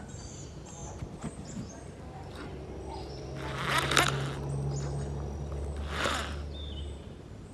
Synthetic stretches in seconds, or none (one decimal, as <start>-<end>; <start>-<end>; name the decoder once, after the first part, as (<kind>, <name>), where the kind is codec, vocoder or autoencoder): none